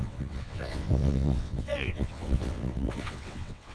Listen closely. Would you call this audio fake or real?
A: fake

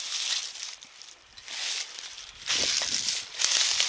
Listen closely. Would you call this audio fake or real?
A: real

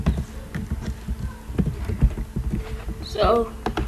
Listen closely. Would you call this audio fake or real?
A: real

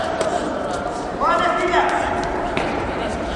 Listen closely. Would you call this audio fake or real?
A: fake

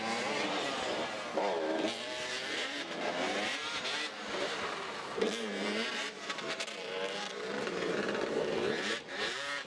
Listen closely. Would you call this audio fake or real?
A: fake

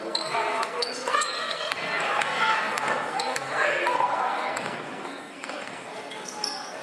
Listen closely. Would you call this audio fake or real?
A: fake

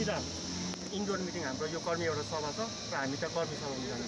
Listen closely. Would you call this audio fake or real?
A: real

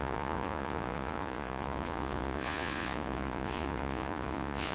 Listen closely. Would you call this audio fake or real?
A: fake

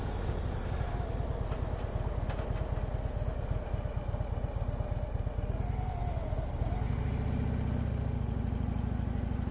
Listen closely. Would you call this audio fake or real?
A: real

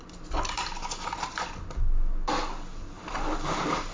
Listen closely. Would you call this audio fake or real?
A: real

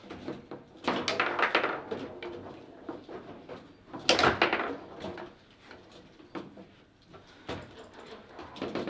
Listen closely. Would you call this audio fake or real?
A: real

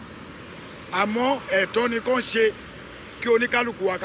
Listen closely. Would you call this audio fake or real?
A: real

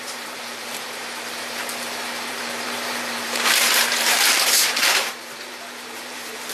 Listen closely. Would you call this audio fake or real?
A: fake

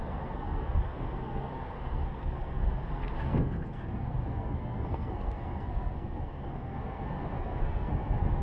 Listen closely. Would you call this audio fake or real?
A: fake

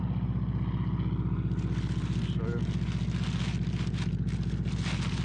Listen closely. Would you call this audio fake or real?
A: real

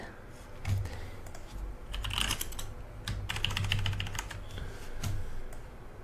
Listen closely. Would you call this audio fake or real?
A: real